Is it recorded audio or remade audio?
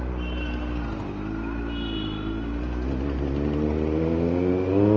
recorded